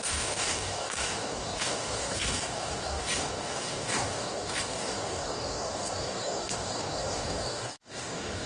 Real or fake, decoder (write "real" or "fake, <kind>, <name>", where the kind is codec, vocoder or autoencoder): fake, codec, DAC